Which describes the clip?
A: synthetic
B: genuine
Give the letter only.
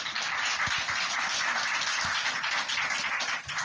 B